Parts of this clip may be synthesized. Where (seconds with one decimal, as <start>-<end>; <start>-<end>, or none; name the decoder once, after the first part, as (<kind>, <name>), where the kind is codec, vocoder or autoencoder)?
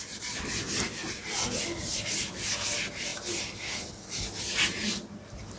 none